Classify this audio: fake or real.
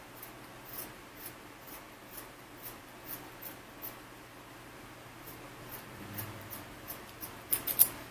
real